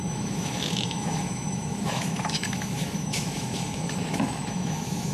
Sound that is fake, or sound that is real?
fake